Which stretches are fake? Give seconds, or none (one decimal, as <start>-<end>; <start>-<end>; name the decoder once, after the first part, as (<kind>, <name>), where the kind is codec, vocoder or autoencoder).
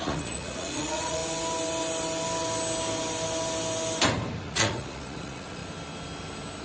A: 0.0-1.2 (vocoder, Vocos); 4.4-5.6